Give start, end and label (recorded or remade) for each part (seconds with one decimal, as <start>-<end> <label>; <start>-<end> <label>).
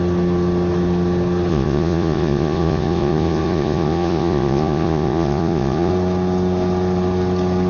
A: 0.0-1.5 recorded; 1.5-5.9 remade; 5.9-7.7 recorded